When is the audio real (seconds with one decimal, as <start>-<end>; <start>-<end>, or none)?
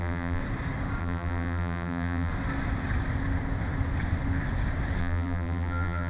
0.4-1.0; 2.3-5.0